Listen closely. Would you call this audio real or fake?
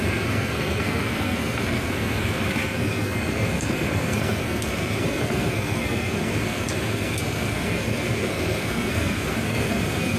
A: fake